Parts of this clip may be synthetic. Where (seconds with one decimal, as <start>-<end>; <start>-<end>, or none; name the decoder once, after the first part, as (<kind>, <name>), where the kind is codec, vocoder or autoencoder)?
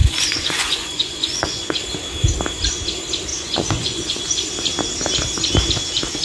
0.0-1.8 (vocoder, Vocos); 3.3-4.5